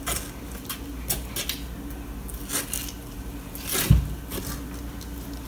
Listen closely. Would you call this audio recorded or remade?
recorded